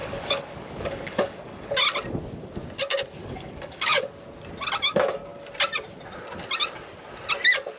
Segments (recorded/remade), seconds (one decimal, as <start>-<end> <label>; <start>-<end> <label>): 0.0-1.8 remade; 1.8-3.2 recorded; 3.2-4.0 remade; 4.0-7.8 recorded